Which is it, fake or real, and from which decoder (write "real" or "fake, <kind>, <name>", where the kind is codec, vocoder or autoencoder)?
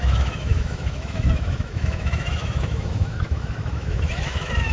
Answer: fake, autoencoder, DAC-VAE